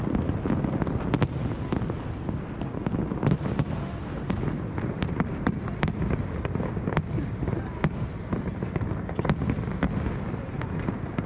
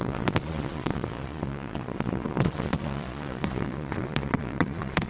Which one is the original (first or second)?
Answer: first